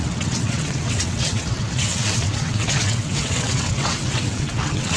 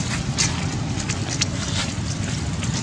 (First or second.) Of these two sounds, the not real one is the first